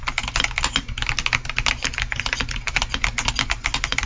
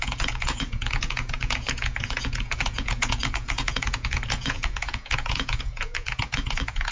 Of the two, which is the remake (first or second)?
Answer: second